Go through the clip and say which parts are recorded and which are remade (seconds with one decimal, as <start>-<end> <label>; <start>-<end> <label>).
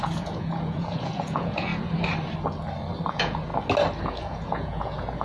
0.0-1.7 remade; 1.7-3.1 recorded; 3.1-3.5 remade; 3.5-4.0 recorded; 4.0-5.2 remade